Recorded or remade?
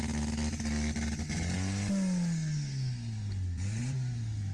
recorded